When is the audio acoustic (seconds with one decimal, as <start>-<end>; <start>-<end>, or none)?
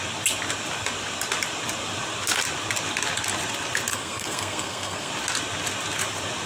0.0-3.9; 5.1-6.5